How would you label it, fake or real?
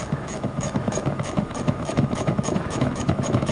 fake